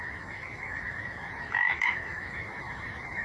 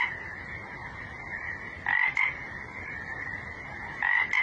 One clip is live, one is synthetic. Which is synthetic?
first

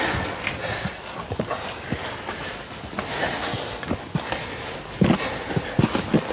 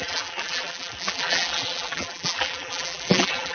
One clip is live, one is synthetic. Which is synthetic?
second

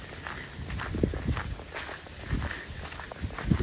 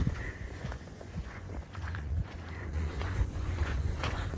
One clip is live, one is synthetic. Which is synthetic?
second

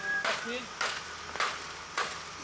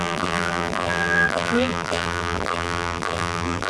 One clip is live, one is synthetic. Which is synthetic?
second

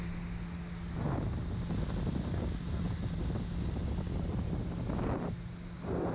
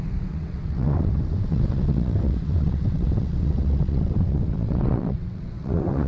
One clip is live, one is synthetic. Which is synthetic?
second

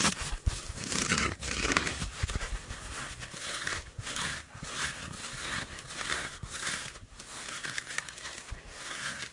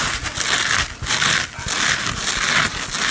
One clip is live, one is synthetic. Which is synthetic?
first